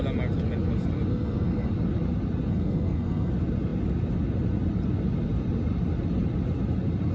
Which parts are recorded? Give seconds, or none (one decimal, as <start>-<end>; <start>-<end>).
0.0-1.1; 1.7-2.5; 3.3-7.1